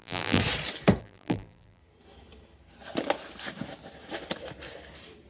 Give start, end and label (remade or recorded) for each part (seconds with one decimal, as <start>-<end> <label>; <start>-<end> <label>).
0.0-0.4 remade; 0.4-1.0 recorded; 1.0-1.8 remade; 1.8-5.3 recorded